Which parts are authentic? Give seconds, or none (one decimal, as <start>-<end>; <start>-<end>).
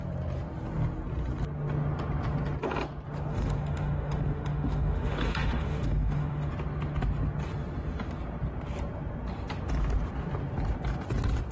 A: 0.0-3.3; 6.5-11.5